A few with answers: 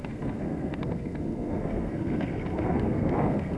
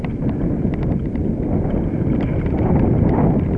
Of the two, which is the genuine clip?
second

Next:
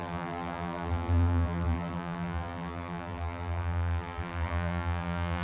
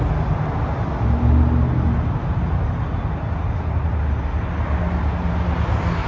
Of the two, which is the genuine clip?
second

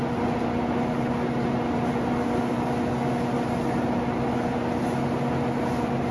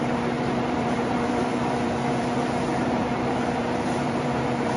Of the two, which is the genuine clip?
first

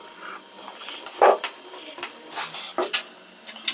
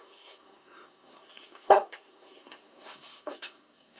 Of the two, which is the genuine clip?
first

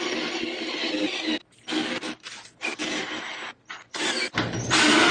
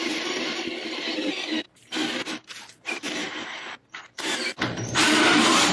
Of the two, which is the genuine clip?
first